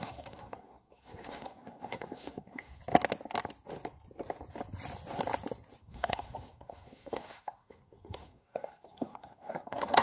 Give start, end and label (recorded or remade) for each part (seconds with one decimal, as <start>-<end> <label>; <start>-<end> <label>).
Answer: 0.0-2.8 remade; 2.8-5.8 recorded; 5.8-10.0 remade

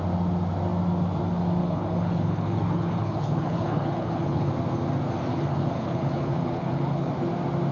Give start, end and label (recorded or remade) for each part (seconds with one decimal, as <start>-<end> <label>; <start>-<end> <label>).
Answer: 0.0-1.6 recorded; 1.6-4.5 remade; 4.5-5.3 recorded; 5.3-7.1 remade; 7.1-7.7 recorded